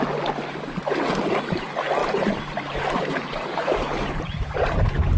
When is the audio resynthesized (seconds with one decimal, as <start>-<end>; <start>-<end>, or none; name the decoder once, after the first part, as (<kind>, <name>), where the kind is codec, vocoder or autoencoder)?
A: 2.0-5.2 (vocoder, BigVGAN v2)